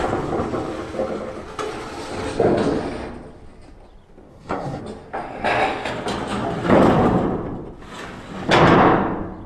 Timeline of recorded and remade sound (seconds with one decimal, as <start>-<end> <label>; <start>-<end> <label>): 0.0-4.3 recorded; 4.3-4.8 remade; 4.8-9.5 recorded